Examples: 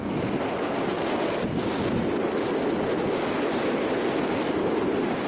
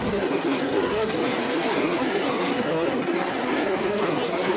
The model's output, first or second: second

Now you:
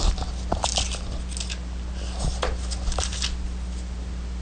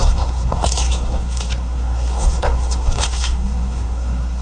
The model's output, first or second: second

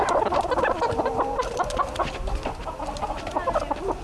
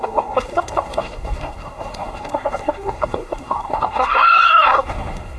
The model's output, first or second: second